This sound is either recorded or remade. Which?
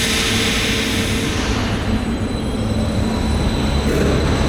recorded